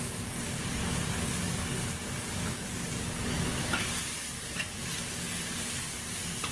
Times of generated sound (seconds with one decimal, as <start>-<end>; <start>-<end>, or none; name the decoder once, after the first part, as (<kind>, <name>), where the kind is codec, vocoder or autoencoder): 0.0-6.5 (codec, DAC)